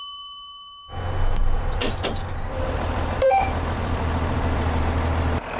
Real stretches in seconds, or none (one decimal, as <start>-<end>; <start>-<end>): 0.0-1.4; 4.8-5.6